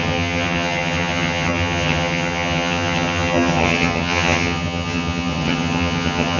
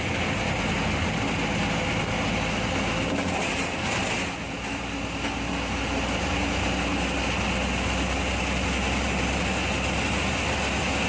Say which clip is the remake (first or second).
first